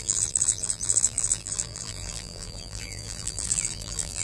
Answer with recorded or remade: remade